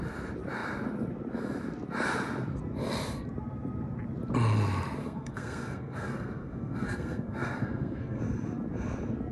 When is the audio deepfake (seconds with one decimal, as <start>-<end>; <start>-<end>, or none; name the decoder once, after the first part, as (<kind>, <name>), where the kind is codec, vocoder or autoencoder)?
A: 5.0-8.2 (codec, SNAC)